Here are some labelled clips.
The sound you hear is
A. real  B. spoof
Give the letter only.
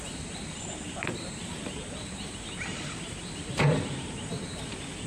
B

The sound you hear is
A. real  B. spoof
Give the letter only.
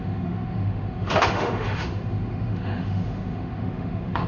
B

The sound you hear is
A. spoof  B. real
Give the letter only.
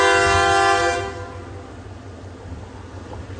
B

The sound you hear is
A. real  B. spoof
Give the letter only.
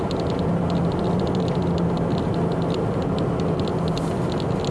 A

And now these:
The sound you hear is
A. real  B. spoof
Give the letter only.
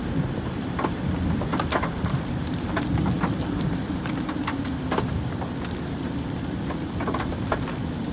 B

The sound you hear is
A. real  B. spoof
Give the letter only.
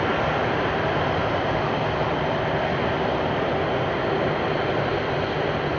A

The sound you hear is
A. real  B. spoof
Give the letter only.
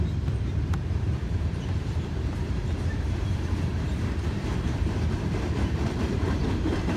B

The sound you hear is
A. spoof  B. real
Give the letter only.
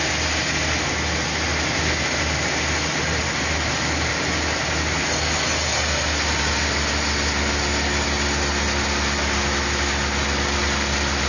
B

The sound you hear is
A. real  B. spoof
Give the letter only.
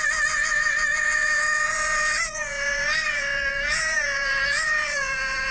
B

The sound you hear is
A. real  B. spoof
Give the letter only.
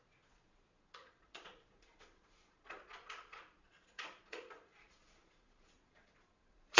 B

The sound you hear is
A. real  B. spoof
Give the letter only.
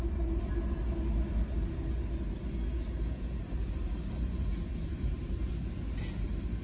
A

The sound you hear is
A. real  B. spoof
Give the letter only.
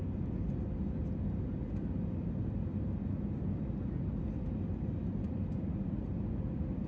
A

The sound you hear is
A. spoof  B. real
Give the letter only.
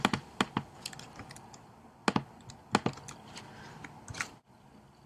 B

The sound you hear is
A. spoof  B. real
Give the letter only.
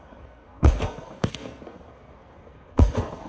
A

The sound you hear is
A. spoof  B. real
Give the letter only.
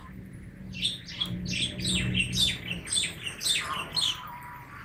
B